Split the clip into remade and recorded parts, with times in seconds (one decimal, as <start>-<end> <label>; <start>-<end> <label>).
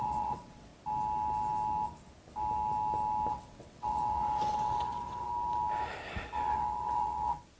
0.0-0.7 remade; 0.7-3.3 recorded; 3.3-5.3 remade; 5.3-6.2 recorded; 6.2-7.6 remade